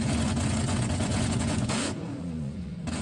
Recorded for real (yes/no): no